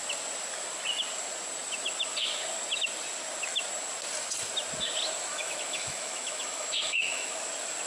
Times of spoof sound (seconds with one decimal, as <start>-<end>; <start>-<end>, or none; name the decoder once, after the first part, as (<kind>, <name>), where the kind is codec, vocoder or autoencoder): 5.3-7.5 (autoencoder, DAC-VAE)